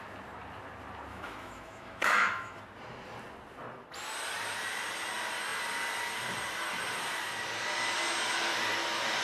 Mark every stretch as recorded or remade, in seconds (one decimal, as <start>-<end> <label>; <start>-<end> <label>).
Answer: 0.0-1.1 recorded; 1.1-2.6 remade; 2.6-9.2 recorded